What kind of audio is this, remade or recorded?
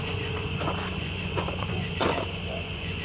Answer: remade